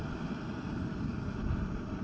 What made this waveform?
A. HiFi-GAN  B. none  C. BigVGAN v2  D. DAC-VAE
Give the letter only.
B